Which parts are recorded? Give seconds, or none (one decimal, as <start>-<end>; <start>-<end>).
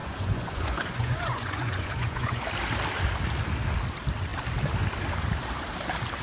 2.4-6.2